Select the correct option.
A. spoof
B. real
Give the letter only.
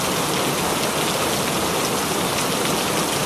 B